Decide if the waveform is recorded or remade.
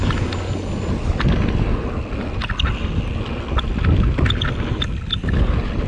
recorded